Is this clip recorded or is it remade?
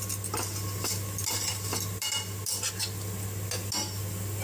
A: recorded